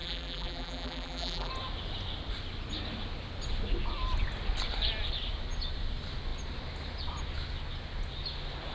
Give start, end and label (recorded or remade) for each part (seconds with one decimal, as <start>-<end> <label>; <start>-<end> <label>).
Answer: 0.0-1.5 remade; 1.5-8.7 recorded